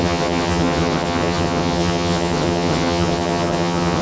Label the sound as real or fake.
fake